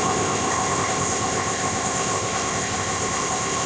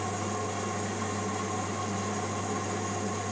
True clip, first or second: second